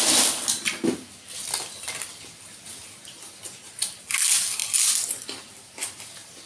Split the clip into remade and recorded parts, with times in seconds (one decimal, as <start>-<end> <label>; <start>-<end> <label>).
0.0-6.5 recorded